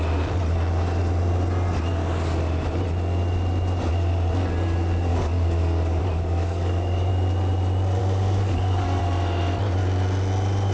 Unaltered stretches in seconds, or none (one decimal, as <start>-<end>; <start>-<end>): 0.0-5.1; 7.1-8.0; 9.0-10.7